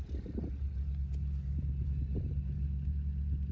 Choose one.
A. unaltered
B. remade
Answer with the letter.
A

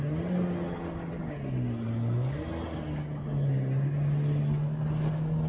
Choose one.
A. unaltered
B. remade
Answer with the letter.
A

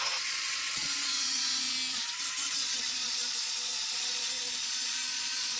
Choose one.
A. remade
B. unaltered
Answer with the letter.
A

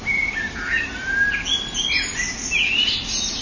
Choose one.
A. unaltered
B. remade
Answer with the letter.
A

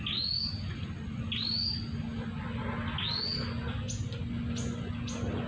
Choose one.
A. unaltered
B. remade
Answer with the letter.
A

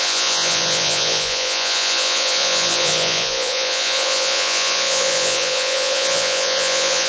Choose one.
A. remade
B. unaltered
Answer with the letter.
A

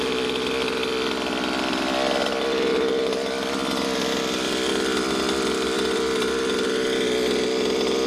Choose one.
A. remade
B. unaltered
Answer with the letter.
B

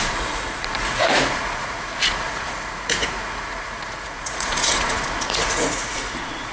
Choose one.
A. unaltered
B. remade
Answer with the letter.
B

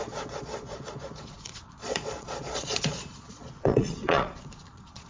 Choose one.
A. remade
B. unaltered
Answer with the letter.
A